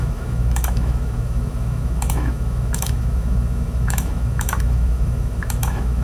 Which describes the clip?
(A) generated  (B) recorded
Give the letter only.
A